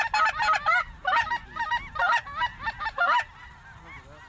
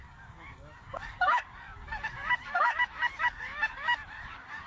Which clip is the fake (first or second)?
second